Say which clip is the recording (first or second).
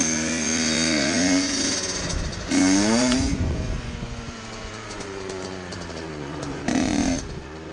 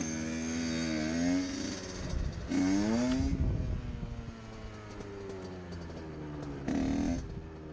second